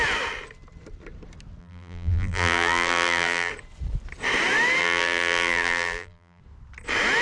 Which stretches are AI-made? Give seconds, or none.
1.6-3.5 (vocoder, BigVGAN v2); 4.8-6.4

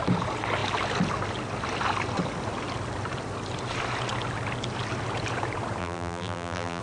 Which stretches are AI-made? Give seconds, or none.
5.8-6.8 (vocoder, BigVGAN v2)

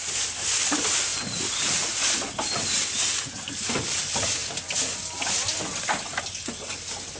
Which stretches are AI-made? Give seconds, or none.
1.1-2.0 (vocoder, BigVGAN v2)

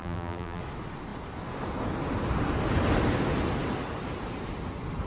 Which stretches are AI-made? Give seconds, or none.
0.0-0.6 (vocoder, BigVGAN v2)

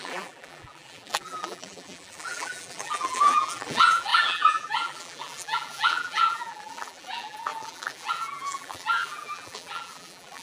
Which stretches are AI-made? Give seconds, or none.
0.0-10.4 (vocoder, BigVGAN v2)

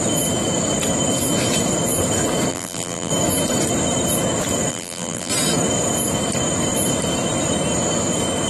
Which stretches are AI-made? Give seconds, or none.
2.5-3.1 (vocoder, BigVGAN v2); 4.7-5.3